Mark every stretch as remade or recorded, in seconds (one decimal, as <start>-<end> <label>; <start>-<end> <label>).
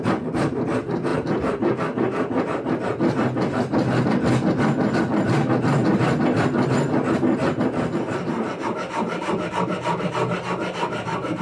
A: 0.0-1.1 remade; 1.1-5.0 recorded; 5.0-5.8 remade; 5.8-6.4 recorded; 6.4-11.4 remade